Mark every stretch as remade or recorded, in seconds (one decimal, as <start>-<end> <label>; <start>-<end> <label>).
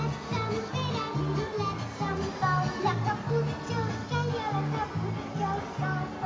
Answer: 0.0-2.3 recorded; 2.3-3.0 remade; 3.0-6.3 recorded